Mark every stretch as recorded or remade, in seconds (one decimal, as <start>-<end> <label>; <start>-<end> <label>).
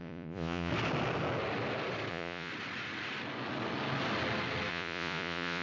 0.0-0.7 remade; 0.7-2.1 recorded; 2.1-2.5 remade; 2.5-4.7 recorded; 4.7-5.6 remade